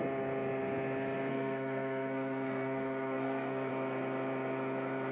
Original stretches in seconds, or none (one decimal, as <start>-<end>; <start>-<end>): 0.0-1.3; 3.7-5.1